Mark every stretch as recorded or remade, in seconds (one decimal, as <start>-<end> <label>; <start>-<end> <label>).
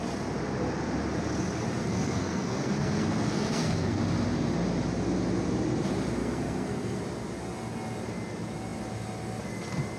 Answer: 0.0-1.8 recorded; 1.8-4.0 remade; 4.0-6.2 recorded; 6.2-7.0 remade; 7.0-10.0 recorded